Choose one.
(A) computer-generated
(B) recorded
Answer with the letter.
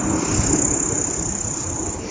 B